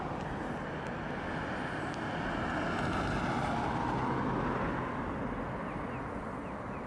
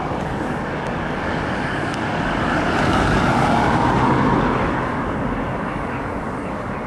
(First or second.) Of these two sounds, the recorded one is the first